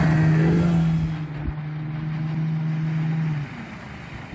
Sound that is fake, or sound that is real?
real